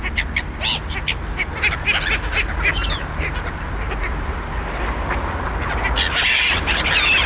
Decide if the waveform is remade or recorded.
recorded